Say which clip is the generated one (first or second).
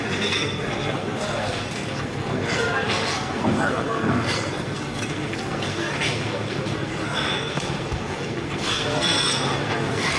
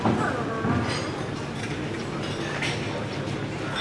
first